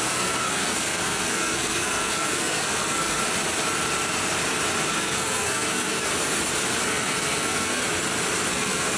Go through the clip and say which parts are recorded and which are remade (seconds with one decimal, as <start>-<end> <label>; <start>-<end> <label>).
0.0-3.2 remade; 3.2-4.9 recorded; 4.9-6.1 remade; 6.1-6.8 recorded; 6.8-7.8 remade; 7.8-8.5 recorded; 8.5-9.0 remade